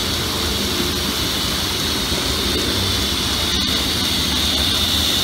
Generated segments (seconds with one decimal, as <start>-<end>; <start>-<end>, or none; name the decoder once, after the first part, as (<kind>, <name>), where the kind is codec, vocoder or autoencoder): none